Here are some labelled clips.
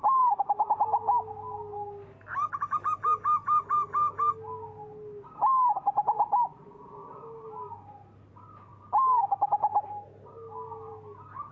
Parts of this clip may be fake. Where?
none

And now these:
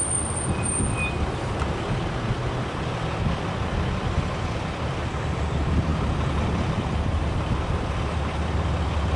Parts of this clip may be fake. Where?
none

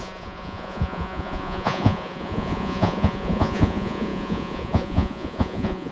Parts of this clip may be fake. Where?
0.0-5.9 (vocoder, Vocos)

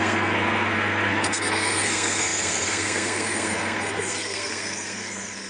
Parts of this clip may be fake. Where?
0.0-5.5 (codec, SNAC)

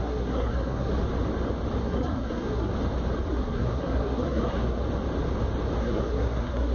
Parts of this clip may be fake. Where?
0.0-0.9 (codec, SNAC); 1.8-2.7; 3.3-4.8; 5.8-6.7

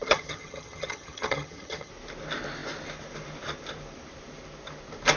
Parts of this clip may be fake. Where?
0.0-1.9 (vocoder, HiFi-GAN)

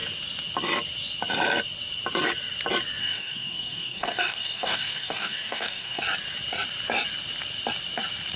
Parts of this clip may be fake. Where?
3.0-6.0 (codec, DAC)

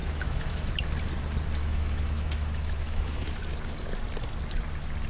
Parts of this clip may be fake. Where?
0.0-0.7 (autoencoder, DAC-VAE); 1.6-3.4